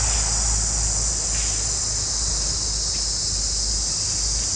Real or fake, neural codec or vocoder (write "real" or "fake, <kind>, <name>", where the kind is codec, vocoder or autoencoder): real